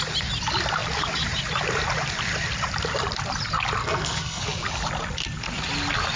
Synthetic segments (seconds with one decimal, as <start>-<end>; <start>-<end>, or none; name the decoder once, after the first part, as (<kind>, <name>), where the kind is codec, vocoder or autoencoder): 3.8-4.4 (codec, SNAC)